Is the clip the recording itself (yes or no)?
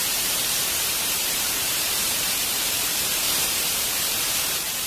no